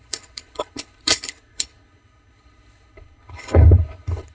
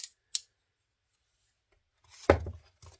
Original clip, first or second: second